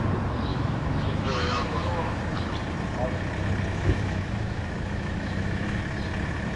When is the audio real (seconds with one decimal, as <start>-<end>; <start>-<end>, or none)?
0.0-0.5; 2.2-3.7; 5.8-6.6